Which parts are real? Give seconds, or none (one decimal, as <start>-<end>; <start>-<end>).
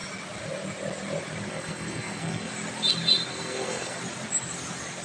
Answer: 0.0-1.5; 2.5-3.3; 4.0-5.0